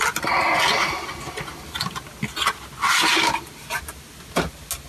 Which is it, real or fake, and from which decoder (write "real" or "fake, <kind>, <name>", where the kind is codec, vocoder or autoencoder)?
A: real